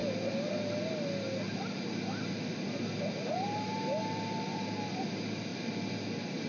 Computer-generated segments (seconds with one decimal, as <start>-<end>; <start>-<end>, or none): none